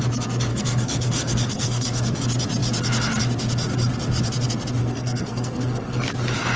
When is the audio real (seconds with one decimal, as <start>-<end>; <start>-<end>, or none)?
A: 0.0-0.5; 2.2-4.8; 6.0-6.6